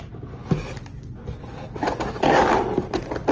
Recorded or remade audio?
recorded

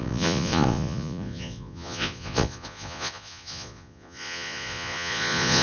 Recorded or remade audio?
remade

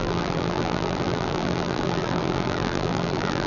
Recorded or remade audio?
remade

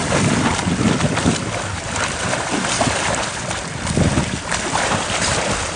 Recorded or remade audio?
remade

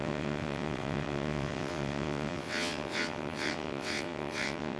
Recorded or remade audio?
remade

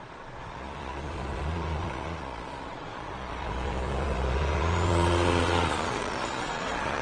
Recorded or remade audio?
remade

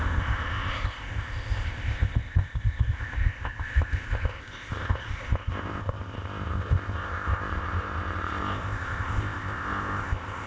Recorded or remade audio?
remade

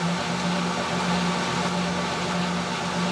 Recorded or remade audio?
recorded